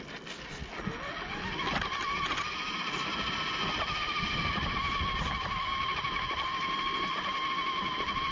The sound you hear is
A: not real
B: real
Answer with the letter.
B